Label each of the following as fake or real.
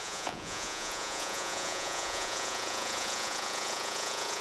fake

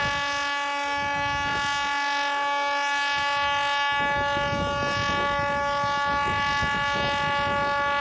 real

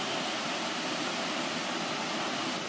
real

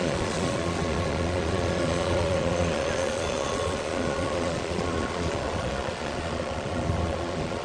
fake